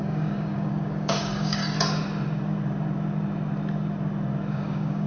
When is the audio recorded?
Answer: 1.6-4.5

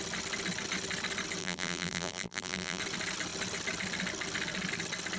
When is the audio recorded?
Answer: 0.0-1.4; 2.8-5.2

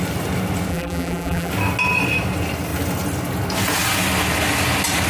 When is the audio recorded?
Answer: 0.0-0.7; 1.5-5.1